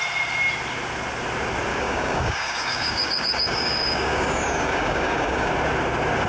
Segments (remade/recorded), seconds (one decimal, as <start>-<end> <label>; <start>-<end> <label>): 0.0-1.7 recorded; 1.7-5.5 remade; 5.5-6.3 recorded

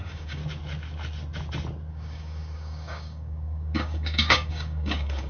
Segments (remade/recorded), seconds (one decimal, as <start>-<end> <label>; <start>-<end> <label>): 0.0-0.4 remade; 0.4-1.9 recorded; 1.9-5.3 remade

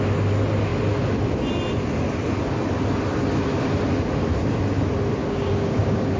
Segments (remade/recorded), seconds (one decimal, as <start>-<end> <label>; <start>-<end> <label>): 0.0-5.2 recorded; 5.2-6.2 remade